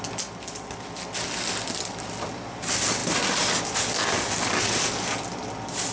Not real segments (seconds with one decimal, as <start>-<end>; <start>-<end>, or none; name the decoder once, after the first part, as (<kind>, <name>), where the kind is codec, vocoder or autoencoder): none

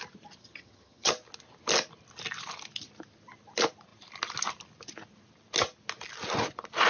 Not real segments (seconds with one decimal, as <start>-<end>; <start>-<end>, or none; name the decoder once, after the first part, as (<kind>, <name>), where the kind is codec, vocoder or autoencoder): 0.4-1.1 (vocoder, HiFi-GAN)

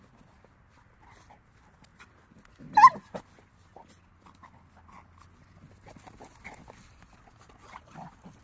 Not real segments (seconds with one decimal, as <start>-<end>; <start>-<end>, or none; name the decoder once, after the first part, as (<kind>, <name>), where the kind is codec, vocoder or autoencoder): none